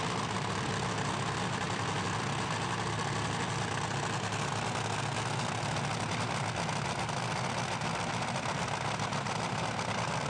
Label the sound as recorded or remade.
recorded